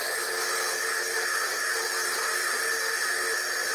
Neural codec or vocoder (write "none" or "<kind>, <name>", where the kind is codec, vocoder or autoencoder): none